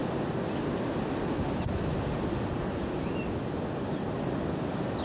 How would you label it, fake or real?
real